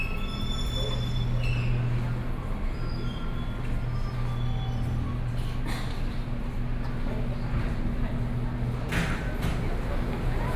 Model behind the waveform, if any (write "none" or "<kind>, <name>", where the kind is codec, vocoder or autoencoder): none